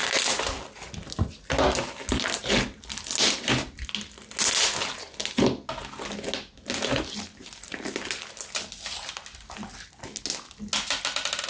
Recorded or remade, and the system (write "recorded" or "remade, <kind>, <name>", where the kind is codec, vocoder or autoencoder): recorded